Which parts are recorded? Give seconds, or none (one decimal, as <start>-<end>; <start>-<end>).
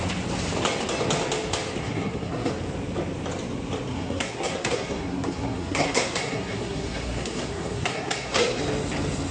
0.0-1.8; 2.5-3.9; 8.6-9.3